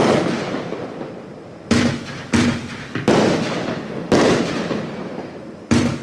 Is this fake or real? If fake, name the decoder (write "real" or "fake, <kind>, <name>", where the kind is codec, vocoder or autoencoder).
real